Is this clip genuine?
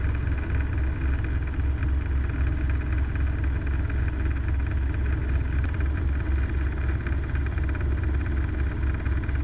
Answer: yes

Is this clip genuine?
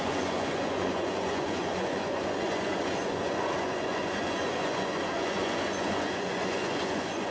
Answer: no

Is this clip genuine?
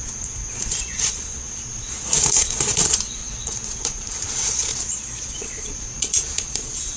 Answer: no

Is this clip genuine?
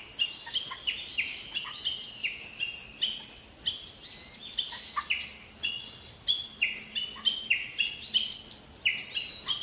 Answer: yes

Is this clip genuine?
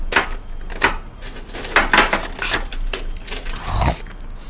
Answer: yes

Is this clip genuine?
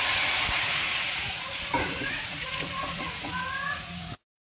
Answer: no